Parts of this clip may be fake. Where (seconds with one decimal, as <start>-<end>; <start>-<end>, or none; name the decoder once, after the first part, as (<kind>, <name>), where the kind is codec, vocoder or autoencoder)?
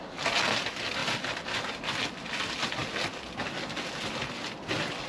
2.8-3.5 (vocoder, BigVGAN v2); 4.2-5.1